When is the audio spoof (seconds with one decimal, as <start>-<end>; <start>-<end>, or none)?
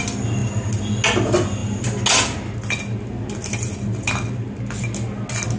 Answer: none